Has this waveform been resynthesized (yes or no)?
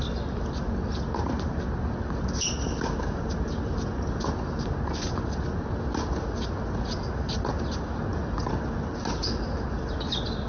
no